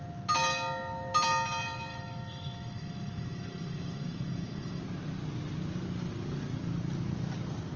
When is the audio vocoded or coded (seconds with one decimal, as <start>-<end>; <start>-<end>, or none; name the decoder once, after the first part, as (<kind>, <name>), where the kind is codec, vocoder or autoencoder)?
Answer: 1.9-4.8 (autoencoder, DAC-VAE)